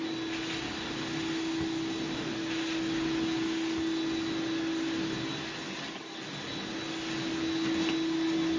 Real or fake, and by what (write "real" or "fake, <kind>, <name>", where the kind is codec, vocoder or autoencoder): real